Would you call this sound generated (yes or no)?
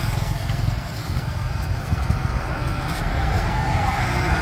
yes